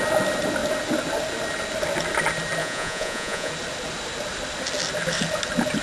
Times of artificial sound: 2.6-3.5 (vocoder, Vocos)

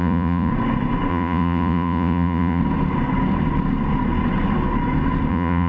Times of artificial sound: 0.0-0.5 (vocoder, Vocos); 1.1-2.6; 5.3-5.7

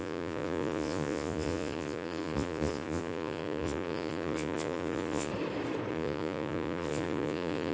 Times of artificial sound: 0.0-5.3 (vocoder, Vocos); 5.9-7.7

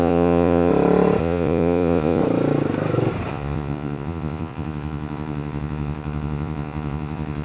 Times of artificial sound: 0.0-0.7 (vocoder, Vocos); 1.2-2.2; 3.3-7.4

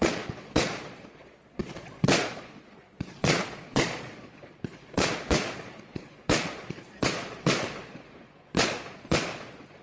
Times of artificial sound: 0.0-9.8 (vocoder, Vocos)

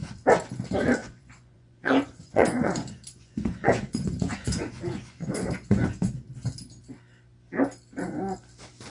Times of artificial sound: 1.0-6.1 (vocoder, Vocos)

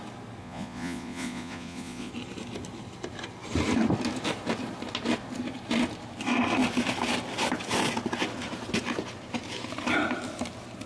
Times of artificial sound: 0.4-2.1 (vocoder, Vocos)

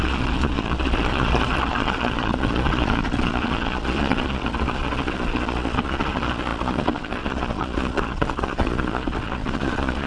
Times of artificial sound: 0.0-10.1 (vocoder, Vocos)